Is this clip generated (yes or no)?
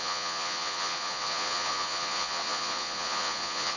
yes